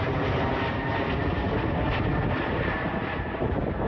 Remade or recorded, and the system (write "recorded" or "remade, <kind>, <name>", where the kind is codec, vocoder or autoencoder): remade, vocoder, BigVGAN v2